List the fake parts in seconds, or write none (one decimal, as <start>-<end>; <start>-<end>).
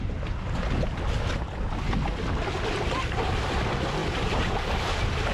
4.0-4.8